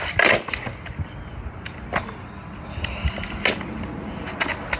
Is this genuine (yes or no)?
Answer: yes